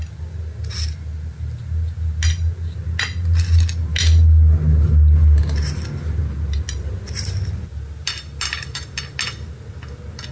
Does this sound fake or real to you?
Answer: real